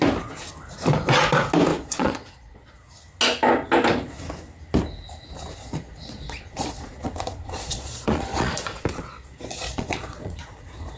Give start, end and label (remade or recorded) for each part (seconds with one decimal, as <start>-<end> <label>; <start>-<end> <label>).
0.0-1.7 recorded; 1.7-2.9 remade; 2.9-5.6 recorded; 5.6-11.0 remade